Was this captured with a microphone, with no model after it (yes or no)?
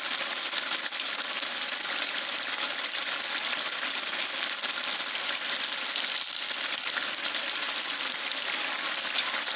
yes